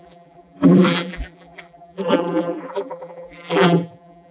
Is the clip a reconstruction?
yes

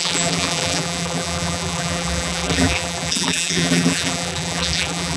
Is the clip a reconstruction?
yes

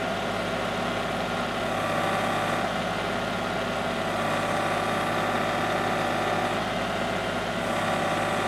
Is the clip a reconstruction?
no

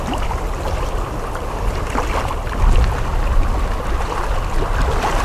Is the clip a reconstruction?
no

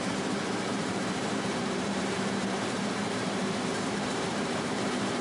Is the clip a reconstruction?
yes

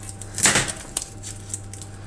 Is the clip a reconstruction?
no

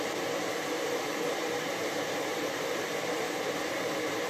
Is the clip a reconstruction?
yes